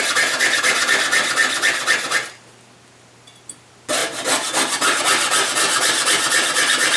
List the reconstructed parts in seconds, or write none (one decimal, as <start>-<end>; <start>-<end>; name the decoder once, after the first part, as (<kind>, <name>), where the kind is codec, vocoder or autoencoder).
none